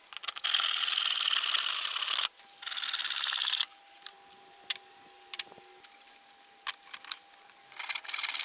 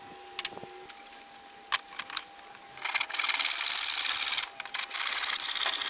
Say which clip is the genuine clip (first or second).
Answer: second